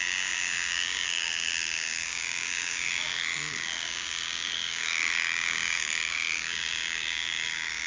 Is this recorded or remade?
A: remade